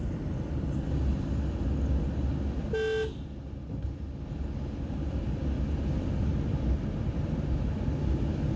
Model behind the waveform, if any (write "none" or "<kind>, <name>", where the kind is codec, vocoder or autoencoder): none